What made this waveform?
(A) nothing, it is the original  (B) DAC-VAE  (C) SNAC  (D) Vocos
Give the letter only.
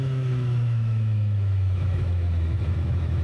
B